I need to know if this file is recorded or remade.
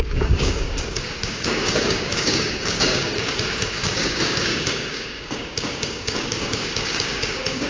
remade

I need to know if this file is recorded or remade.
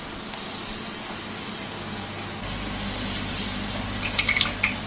recorded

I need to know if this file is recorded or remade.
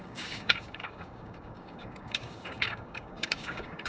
remade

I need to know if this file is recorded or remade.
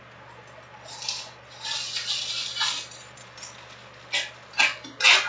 recorded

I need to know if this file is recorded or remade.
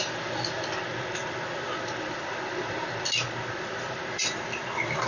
recorded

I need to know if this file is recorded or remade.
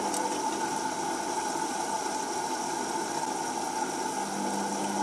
recorded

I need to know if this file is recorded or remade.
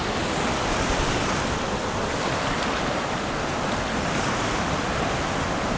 recorded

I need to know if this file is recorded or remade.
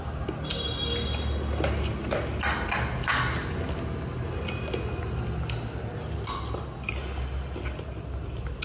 recorded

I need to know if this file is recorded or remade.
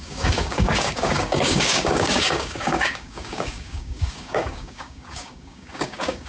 remade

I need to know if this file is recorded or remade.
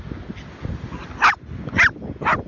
recorded